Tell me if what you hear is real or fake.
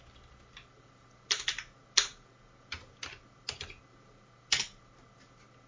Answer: real